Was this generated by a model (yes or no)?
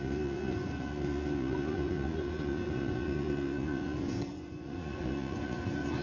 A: yes